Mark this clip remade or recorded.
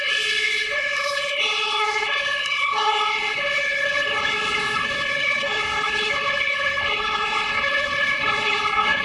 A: remade